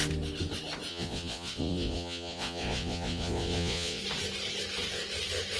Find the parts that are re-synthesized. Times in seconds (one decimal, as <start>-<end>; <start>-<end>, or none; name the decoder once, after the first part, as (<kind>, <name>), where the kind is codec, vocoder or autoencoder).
0.9-4.0 (vocoder, Vocos)